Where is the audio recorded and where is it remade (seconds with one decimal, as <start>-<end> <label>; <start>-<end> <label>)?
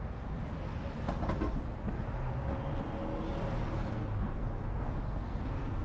0.0-0.4 remade; 0.4-3.9 recorded; 3.9-5.8 remade